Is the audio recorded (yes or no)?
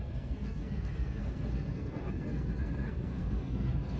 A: no